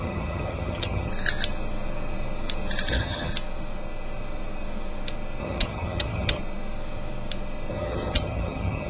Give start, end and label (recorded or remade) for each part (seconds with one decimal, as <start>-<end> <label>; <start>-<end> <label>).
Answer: 0.0-1.1 remade; 1.1-2.9 recorded; 2.9-3.3 remade; 3.3-5.4 recorded; 5.4-6.4 remade; 6.4-7.7 recorded; 7.7-8.9 remade